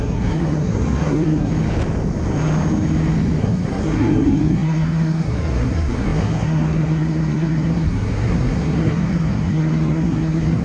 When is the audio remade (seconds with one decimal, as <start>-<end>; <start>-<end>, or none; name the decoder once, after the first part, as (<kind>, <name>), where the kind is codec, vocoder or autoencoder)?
0.0-1.5 (codec, SNAC); 3.4-10.6